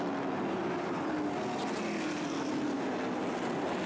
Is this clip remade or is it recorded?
recorded